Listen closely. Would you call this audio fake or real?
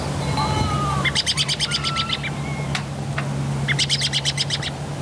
real